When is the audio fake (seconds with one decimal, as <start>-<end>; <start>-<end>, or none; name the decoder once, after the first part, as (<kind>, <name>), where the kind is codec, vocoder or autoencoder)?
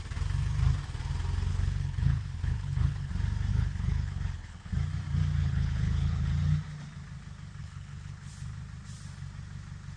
1.5-3.1 (codec, HILCodec); 3.5-4.7; 5.4-6.3; 7.6-8.3